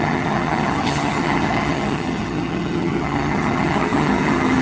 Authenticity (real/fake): fake